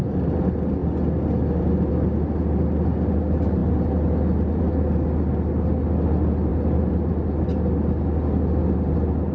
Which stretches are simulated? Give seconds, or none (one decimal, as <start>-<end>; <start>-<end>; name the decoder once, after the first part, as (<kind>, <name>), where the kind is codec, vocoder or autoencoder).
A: none